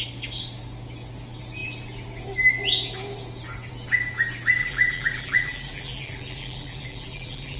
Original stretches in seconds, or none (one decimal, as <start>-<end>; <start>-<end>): 0.0-4.6